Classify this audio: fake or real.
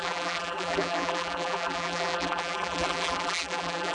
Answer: fake